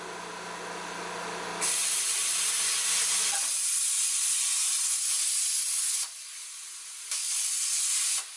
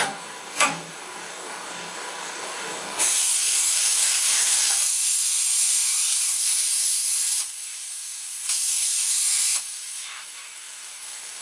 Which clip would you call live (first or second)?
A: first